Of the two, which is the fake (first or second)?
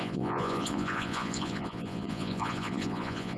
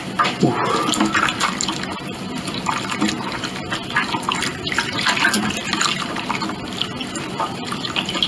first